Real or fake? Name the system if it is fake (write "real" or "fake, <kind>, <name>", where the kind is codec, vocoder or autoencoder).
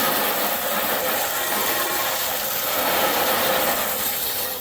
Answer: real